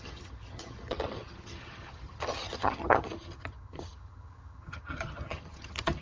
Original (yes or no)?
no